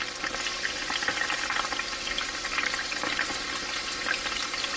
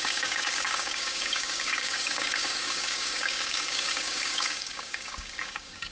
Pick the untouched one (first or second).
first